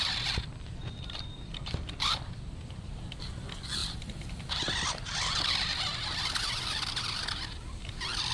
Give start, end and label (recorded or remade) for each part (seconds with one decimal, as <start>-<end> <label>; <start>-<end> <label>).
0.0-3.8 remade; 3.8-4.9 recorded; 4.9-8.3 remade